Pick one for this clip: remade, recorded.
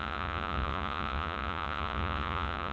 remade